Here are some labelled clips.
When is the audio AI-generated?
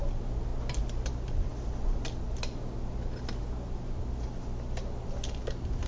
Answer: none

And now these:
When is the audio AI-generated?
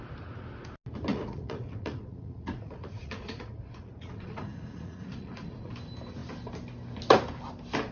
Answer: 1.1-5.7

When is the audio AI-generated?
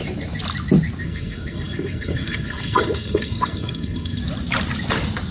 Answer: 1.0-4.2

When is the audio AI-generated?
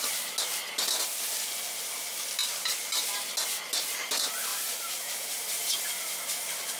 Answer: 2.4-3.3; 4.5-5.4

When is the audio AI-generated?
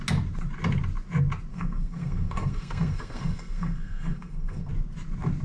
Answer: 1.5-4.7